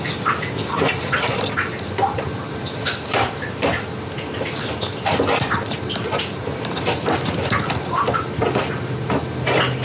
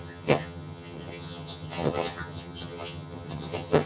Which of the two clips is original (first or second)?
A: first